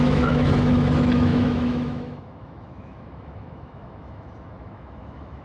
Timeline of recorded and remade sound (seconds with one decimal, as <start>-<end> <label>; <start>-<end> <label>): 0.0-5.4 remade